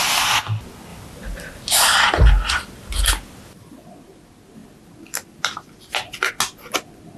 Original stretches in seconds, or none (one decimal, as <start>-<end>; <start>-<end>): 0.0-0.9; 1.7-4.6; 6.3-7.2